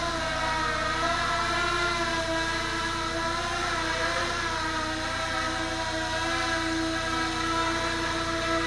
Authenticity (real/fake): real